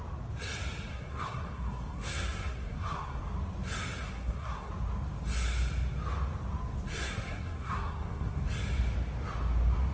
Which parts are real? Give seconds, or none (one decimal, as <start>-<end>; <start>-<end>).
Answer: 0.0-0.9; 3.2-4.0; 4.7-7.0; 8.4-9.9